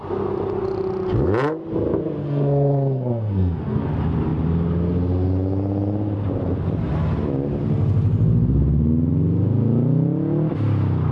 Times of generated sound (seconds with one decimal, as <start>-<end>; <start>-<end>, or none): 2.2-3.9